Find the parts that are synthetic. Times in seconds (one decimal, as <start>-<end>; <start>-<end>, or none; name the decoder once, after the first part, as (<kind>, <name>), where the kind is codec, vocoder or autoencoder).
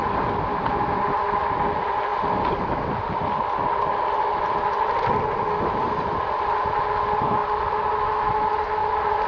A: 8.8-9.3 (vocoder, BigVGAN v2)